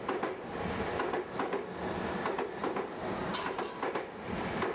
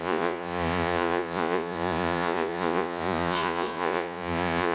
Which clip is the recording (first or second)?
first